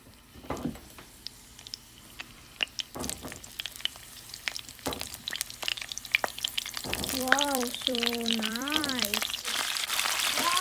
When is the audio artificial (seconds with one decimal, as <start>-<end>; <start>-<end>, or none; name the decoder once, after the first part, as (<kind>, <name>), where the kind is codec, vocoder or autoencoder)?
0.0-2.2 (vocoder, BigVGAN v2); 3.7-10.6